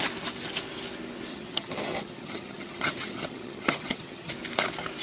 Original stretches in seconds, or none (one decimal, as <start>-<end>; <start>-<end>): 0.0-1.3; 4.3-5.0